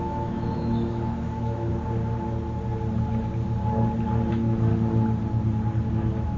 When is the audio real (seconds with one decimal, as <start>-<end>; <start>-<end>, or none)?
1.7-4.3; 4.7-5.9